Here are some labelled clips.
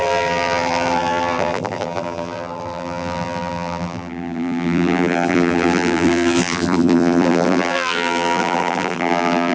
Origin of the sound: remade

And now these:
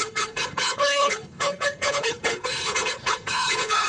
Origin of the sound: remade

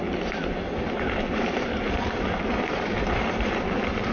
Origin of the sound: remade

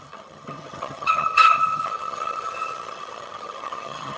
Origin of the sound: remade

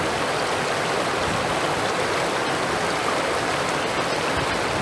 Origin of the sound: recorded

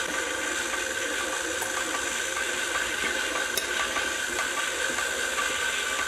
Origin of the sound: recorded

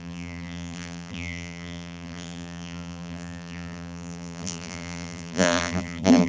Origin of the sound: remade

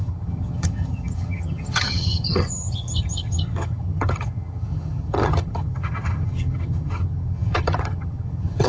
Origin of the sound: remade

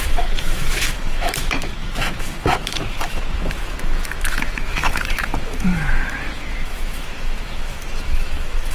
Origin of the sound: remade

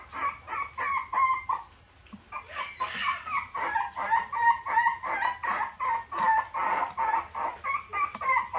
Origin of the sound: recorded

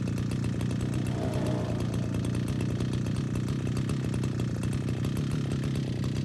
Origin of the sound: recorded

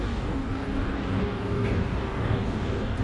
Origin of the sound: remade